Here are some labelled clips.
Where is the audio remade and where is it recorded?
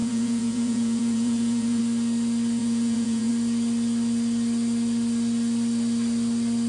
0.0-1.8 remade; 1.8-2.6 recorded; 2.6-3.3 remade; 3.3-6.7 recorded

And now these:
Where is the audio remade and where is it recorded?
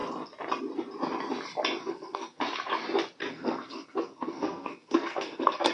0.0-1.8 recorded; 1.8-2.4 remade; 2.4-3.2 recorded; 3.2-5.7 remade